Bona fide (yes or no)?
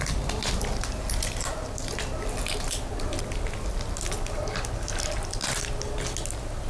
yes